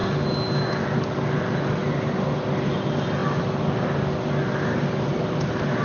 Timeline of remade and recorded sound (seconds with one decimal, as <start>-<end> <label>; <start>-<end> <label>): 0.0-5.8 recorded